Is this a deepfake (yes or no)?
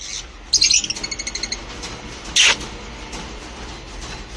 no